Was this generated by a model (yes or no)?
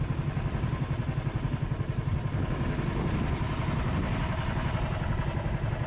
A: no